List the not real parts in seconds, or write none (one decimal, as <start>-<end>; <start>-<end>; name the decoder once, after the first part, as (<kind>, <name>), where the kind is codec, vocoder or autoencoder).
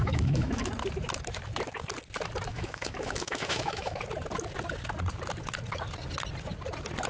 0.0-0.7 (autoencoder, DAC-VAE); 2.5-4.0